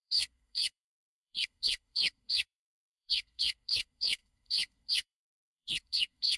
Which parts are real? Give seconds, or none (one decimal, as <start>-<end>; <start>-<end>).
none